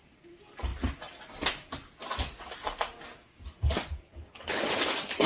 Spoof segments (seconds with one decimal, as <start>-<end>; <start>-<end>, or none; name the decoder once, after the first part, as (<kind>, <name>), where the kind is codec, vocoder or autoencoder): 4.1-4.6 (codec, HILCodec)

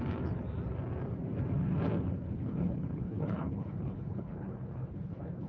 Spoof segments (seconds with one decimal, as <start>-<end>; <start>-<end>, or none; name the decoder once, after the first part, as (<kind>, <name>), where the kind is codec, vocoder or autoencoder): 2.1-5.5 (codec, HILCodec)

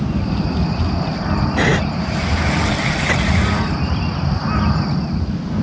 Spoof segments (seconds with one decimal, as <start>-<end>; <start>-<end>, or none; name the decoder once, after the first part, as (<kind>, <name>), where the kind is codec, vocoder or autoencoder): none

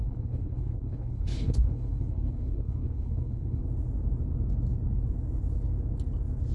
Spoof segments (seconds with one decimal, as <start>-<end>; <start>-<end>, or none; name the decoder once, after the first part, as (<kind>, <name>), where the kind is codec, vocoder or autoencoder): 0.0-3.6 (codec, HILCodec)

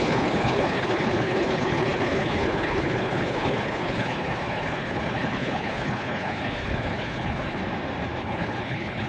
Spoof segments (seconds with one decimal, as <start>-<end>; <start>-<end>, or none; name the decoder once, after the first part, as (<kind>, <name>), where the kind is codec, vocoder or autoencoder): 0.0-7.6 (codec, HILCodec); 8.2-9.1

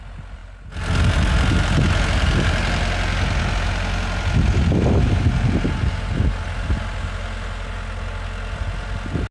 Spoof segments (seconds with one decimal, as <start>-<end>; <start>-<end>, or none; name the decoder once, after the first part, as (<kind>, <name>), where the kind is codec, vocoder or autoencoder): none

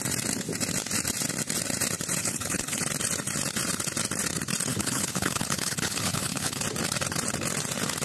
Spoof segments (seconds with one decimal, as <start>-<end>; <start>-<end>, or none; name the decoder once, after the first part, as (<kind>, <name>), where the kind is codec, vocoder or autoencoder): 2.2-2.8 (codec, HILCodec); 4.7-6.6